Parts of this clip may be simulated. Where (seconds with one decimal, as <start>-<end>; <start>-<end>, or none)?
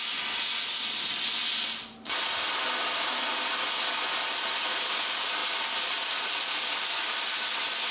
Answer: none